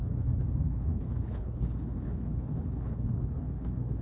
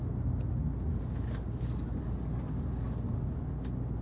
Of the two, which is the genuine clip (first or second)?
second